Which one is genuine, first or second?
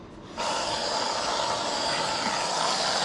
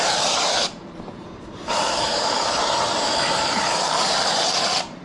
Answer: first